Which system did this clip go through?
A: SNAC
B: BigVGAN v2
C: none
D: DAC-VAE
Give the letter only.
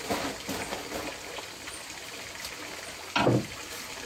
C